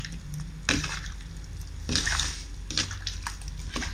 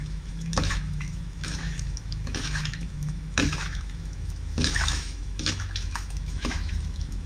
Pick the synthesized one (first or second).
second